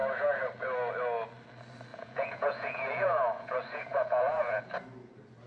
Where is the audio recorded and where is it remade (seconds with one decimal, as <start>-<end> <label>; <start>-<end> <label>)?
0.0-1.9 recorded; 1.9-4.6 remade; 4.6-5.5 recorded